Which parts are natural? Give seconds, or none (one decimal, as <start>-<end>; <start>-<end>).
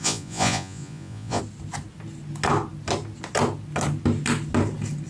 1.4-5.1